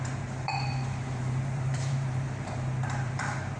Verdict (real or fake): fake